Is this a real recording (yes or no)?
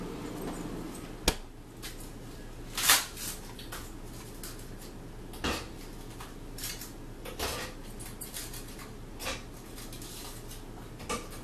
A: yes